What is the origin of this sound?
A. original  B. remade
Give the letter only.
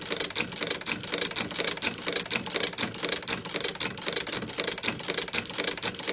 A